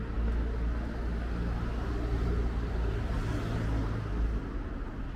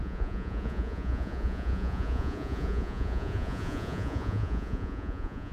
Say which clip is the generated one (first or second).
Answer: second